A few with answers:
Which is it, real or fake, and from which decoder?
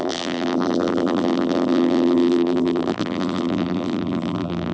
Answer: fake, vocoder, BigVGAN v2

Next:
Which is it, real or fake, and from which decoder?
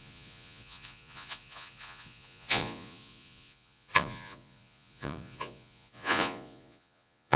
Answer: fake, vocoder, Vocos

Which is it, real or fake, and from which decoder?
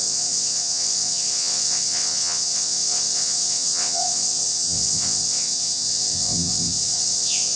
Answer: fake, vocoder, WaveNeXt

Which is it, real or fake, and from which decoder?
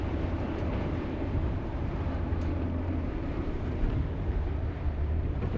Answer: fake, vocoder, BigVGAN v2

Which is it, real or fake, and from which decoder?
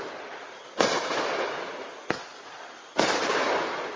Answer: real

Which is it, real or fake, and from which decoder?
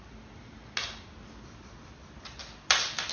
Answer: real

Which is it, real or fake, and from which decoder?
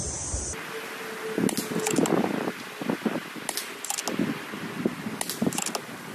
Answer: real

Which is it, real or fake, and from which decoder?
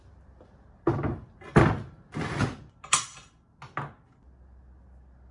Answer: real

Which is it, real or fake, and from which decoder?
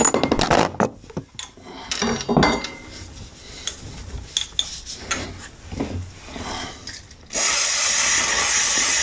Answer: real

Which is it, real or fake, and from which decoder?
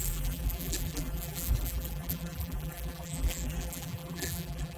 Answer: fake, vocoder, BigVGAN v2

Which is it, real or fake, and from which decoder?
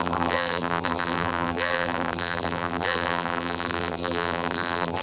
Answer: fake, vocoder, BigVGAN v2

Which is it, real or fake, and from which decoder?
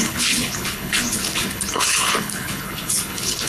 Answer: fake, codec, HILCodec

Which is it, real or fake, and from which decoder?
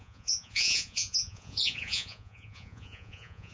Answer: fake, vocoder, Vocos